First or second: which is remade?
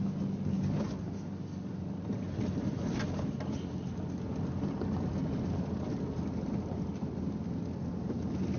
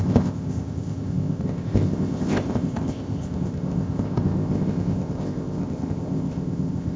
second